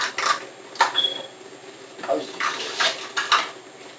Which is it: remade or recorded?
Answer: recorded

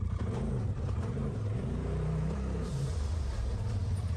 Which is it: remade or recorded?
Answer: remade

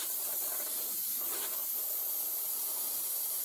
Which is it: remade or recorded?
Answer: remade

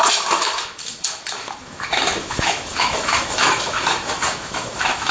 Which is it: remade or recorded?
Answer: remade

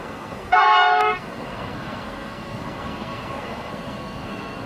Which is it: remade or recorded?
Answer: remade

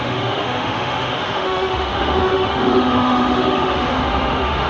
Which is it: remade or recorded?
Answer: remade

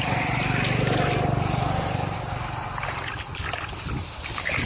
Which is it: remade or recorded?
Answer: recorded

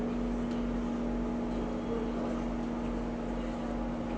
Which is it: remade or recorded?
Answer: recorded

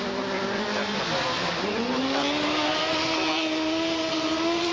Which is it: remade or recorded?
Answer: recorded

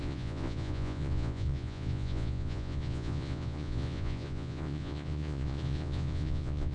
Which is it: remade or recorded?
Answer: remade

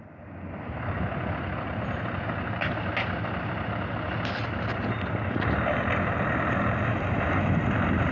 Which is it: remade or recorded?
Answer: recorded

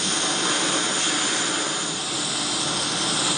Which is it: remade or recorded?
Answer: recorded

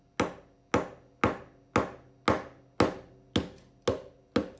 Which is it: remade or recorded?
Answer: recorded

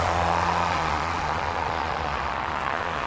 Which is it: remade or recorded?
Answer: remade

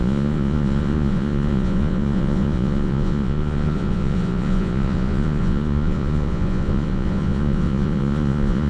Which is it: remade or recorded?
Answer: remade